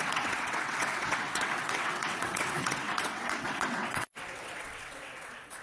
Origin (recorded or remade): remade